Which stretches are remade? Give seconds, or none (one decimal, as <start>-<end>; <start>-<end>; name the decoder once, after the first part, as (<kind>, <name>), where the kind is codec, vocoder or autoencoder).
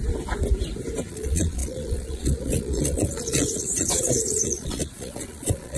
1.1-5.8 (vocoder, Vocos)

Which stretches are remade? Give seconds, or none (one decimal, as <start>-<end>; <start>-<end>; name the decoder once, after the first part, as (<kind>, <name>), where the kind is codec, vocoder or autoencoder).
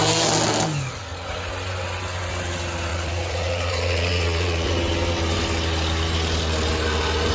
2.9-4.7 (vocoder, Vocos)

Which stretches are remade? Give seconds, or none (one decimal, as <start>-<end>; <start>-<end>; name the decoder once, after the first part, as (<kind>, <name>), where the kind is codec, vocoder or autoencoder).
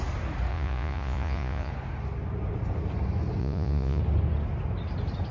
0.5-1.7 (vocoder, Vocos); 3.4-4.0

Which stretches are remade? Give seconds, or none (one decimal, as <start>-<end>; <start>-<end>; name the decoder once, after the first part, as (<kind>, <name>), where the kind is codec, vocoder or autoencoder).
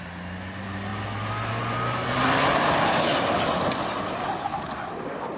none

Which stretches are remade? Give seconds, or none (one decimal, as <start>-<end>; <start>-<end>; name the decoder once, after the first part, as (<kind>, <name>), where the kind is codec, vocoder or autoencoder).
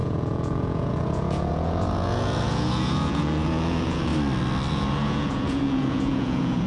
0.0-4.1 (vocoder, Vocos); 4.7-6.7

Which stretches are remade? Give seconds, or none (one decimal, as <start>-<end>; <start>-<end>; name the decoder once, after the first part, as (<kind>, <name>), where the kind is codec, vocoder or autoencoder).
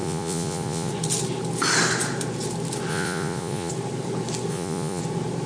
0.0-0.9 (vocoder, Vocos); 2.9-3.7; 4.5-5.0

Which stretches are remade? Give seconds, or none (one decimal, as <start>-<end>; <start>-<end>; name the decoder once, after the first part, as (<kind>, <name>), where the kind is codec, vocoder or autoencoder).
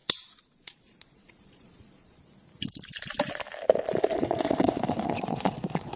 0.0-2.2 (vocoder, Vocos); 4.1-6.0